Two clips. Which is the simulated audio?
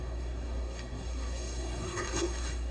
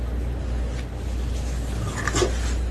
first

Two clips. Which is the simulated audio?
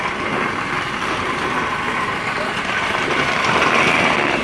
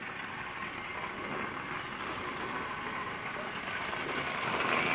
first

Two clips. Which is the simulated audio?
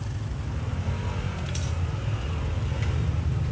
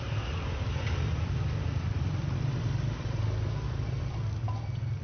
second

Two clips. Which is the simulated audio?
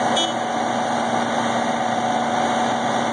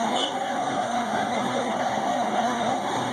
second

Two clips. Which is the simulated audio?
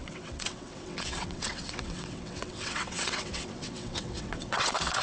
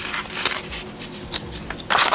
first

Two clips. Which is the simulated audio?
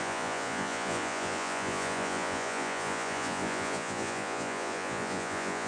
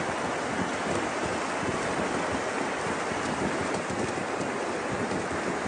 first